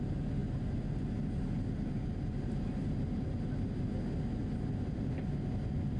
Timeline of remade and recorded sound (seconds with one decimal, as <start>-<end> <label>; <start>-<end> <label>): 0.0-6.0 recorded